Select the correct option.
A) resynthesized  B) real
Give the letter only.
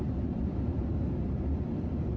A